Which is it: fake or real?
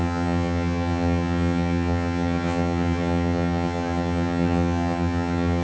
fake